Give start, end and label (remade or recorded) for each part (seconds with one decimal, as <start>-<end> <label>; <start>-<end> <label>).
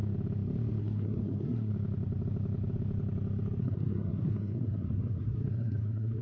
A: 0.0-0.8 recorded; 0.8-1.7 remade; 1.7-3.6 recorded; 3.6-6.2 remade